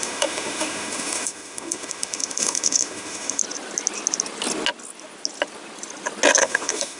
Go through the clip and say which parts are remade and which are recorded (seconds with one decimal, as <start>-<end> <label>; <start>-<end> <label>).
0.0-3.4 remade; 3.4-6.4 recorded; 6.4-7.0 remade